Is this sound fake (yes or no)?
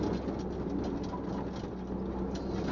no